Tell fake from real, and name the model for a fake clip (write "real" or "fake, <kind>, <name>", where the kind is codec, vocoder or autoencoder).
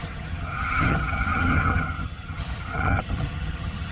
fake, vocoder, HiFi-GAN